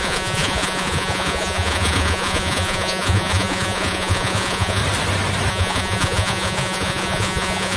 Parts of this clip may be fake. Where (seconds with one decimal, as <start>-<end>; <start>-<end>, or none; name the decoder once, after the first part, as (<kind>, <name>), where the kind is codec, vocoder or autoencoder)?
0.0-4.8 (vocoder, Vocos); 5.5-7.8